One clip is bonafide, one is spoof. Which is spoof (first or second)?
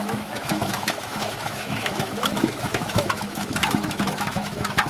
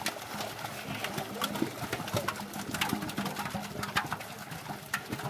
first